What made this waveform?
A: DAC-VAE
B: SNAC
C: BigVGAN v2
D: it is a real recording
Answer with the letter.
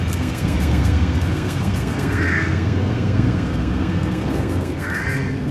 B